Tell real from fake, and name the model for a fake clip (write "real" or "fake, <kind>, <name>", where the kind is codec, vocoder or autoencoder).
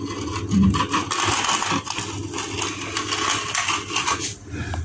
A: real